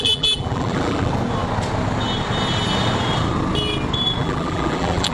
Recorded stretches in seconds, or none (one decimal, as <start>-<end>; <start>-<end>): 1.1-4.2